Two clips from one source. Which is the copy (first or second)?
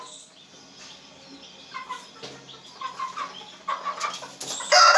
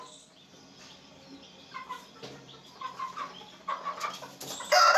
second